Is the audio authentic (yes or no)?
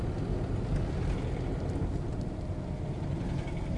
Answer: yes